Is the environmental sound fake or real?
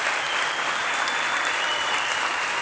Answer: fake